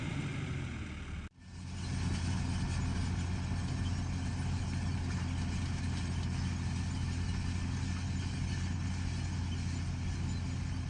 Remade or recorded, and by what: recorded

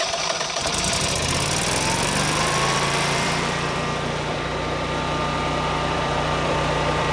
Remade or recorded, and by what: remade, vocoder, BigVGAN v2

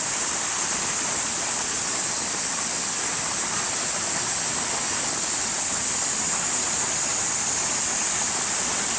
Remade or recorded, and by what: recorded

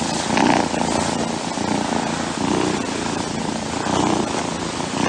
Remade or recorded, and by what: recorded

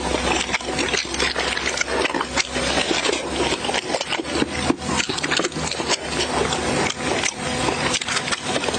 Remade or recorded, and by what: recorded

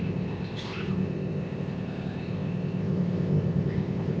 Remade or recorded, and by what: remade, codec, ZipCodec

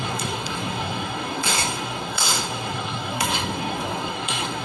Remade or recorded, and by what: remade, codec, SNAC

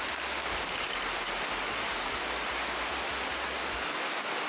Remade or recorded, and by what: recorded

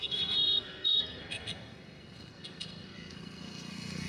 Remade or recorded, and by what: remade, codec, SNAC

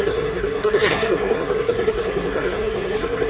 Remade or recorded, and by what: remade, codec, SNAC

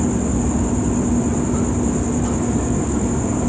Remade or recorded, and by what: recorded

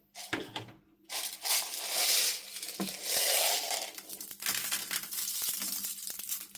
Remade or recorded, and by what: recorded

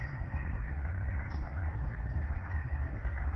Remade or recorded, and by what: remade, codec, SNAC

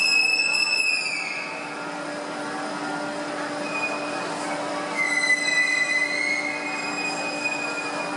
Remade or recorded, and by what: recorded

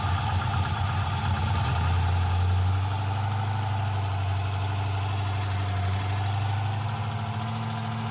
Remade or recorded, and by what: recorded